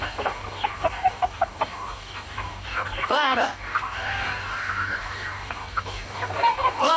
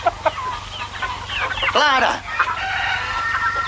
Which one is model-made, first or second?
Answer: first